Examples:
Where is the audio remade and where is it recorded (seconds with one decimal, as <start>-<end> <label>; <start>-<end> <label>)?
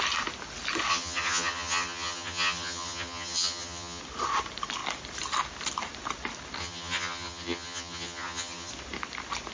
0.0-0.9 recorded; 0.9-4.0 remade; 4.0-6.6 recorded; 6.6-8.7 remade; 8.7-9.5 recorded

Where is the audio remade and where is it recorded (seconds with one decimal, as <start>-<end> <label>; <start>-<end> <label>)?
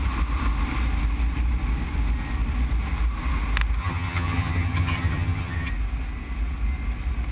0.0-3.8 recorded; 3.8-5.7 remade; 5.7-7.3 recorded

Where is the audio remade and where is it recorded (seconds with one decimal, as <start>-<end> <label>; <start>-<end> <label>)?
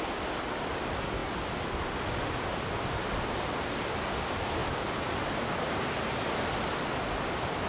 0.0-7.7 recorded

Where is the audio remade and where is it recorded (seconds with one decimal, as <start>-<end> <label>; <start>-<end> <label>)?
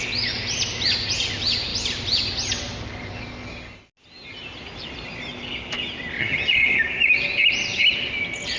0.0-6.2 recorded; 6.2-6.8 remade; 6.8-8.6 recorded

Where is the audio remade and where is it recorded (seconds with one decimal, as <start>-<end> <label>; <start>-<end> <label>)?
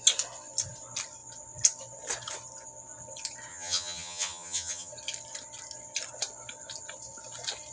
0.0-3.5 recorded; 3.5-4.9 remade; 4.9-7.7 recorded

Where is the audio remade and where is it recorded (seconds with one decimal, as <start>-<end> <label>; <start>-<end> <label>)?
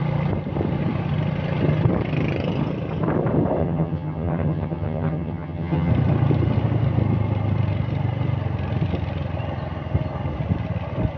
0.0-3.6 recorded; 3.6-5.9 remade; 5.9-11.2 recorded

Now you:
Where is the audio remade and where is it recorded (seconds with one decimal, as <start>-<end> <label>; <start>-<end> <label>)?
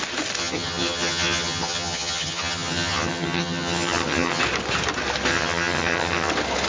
0.0-0.4 recorded; 0.4-4.4 remade; 4.4-5.3 recorded; 5.3-6.3 remade; 6.3-6.7 recorded